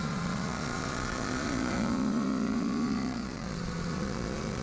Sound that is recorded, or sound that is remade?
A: remade